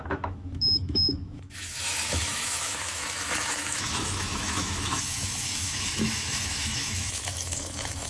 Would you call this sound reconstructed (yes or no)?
yes